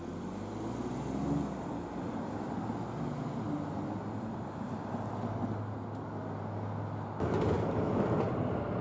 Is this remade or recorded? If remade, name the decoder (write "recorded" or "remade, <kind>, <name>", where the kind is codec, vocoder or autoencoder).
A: recorded